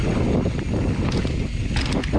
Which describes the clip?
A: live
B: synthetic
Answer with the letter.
A